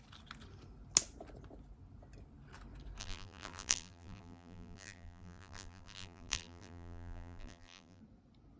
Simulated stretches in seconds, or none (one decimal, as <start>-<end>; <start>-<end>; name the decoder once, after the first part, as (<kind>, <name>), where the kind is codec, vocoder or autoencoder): 3.0-8.0 (vocoder, BigVGAN v2)